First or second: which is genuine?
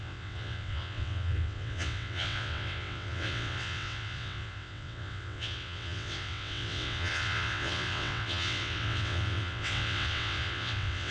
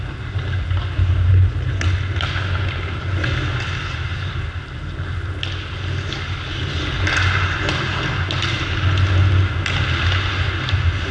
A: second